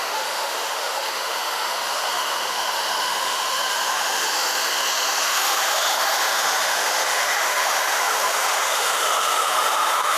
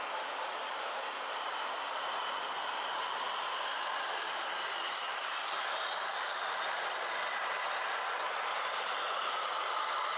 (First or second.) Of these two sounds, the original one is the second